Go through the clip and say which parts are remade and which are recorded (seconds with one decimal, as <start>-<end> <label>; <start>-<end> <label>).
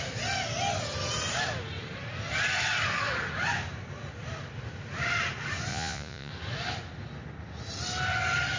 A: 0.0-5.7 recorded; 5.7-6.3 remade; 6.3-8.6 recorded